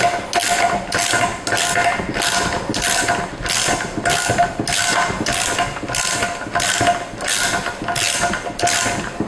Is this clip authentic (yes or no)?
yes